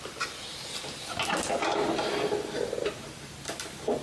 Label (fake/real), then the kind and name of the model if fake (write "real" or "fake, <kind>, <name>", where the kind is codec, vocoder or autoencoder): real